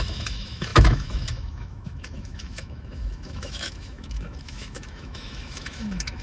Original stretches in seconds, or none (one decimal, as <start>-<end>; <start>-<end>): none